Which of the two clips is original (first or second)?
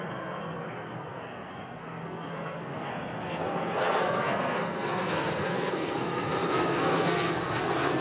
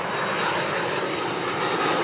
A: second